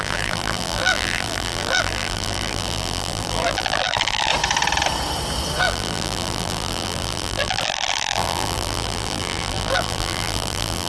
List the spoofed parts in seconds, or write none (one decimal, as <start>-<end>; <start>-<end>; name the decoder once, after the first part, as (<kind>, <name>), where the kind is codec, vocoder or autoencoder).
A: 0.0-4.3 (vocoder, BigVGAN v2); 5.6-10.9